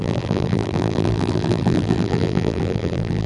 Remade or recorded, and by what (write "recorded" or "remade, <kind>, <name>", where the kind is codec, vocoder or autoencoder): remade, vocoder, BigVGAN v2